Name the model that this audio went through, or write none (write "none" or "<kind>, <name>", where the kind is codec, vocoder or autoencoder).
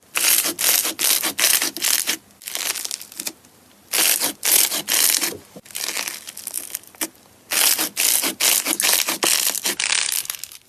none